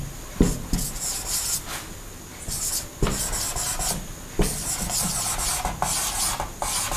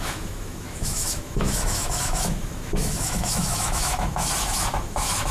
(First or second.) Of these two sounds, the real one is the first